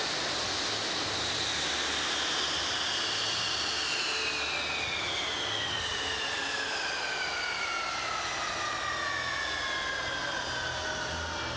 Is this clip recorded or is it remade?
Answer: recorded